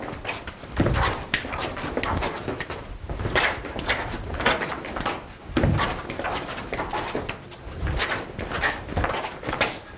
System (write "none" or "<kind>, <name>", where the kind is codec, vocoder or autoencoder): vocoder, BigVGAN v2